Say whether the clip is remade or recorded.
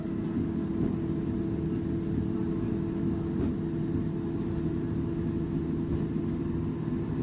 recorded